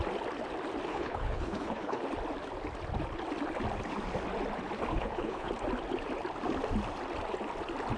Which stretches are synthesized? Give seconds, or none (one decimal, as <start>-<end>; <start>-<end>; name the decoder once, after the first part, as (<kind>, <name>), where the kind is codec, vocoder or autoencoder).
0.9-2.0 (codec, HILCodec); 4.9-5.5